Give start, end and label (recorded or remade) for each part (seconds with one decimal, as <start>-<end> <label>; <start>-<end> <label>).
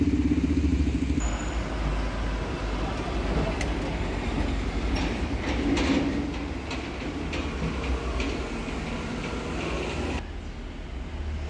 0.0-11.5 recorded